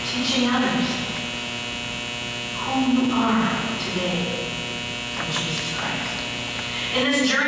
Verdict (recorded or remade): recorded